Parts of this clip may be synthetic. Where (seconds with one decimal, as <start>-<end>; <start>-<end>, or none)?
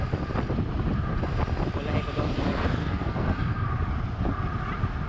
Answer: 2.8-3.7